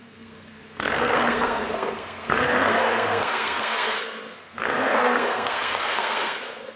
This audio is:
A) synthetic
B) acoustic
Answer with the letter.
A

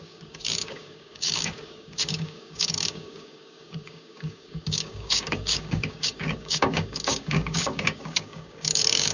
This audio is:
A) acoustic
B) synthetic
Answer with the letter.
B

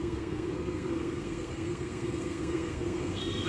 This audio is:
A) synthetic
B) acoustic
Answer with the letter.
A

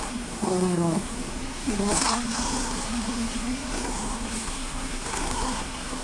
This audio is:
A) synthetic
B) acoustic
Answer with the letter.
A